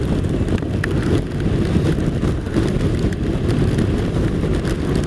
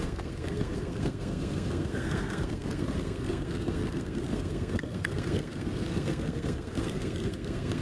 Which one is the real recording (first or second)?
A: first